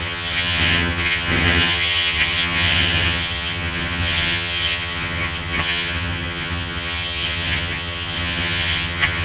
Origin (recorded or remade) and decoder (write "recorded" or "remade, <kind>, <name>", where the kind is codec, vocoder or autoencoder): remade, vocoder, HiFi-GAN